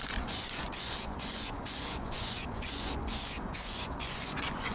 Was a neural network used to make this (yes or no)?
yes